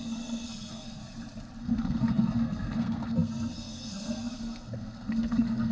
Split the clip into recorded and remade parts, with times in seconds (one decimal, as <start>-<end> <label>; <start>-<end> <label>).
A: 0.0-1.0 remade; 1.0-1.6 recorded; 1.6-5.7 remade